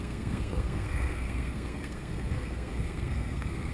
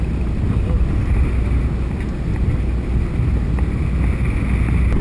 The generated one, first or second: first